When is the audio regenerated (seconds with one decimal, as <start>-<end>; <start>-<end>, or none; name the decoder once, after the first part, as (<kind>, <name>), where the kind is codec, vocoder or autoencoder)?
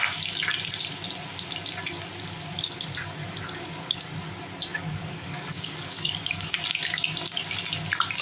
3.2-4.0 (codec, DAC); 4.7-6.6